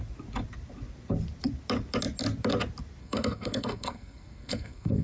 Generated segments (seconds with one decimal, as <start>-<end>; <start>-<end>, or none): 3.0-5.0